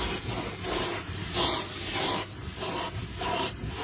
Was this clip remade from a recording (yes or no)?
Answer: yes